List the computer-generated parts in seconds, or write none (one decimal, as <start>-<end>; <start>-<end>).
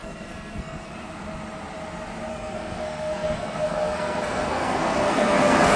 0.0-0.9; 2.3-5.8